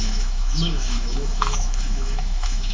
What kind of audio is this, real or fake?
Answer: fake